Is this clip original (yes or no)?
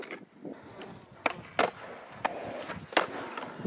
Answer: yes